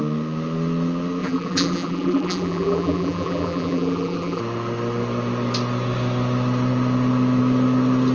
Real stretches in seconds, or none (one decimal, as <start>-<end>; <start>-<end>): 0.0-1.2; 4.4-8.1